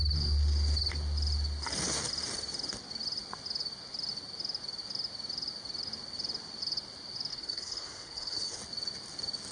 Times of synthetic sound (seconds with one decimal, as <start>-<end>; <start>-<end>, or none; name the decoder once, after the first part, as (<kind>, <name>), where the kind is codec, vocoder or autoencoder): 7.3-8.6 (codec, HILCodec)